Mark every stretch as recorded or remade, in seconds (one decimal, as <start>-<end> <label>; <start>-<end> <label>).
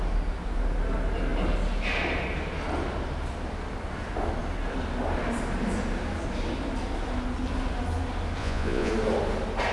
0.0-8.4 recorded; 8.4-8.9 remade; 8.9-9.7 recorded